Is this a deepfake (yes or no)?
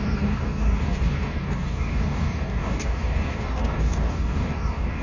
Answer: yes